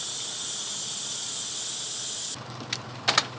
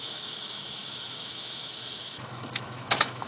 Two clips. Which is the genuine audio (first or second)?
first